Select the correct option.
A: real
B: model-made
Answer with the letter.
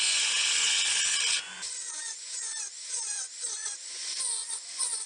B